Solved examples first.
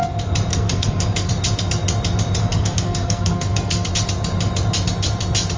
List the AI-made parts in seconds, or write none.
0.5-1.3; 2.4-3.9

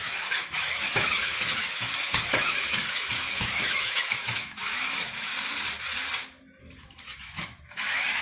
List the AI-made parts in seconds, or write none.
0.0-5.3; 6.6-8.2

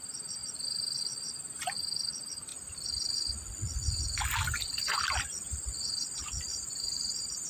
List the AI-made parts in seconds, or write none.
6.5-7.5

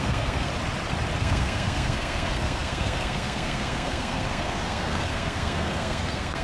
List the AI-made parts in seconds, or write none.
0.0-0.5; 1.2-6.4

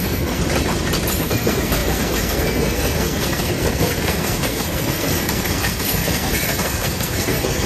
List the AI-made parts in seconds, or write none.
0.0-0.4; 1.2-7.7